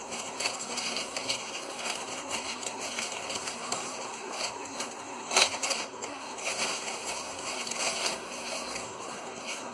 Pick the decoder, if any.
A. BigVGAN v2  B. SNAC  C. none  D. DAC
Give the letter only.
B